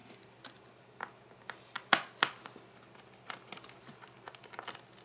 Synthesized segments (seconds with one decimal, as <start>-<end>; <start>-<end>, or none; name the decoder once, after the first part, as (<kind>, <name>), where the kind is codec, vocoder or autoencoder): none